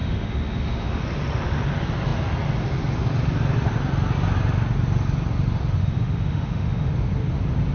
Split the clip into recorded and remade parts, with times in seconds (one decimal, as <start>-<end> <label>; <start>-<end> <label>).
0.0-1.0 remade; 1.0-5.8 recorded; 5.8-6.9 remade; 6.9-7.7 recorded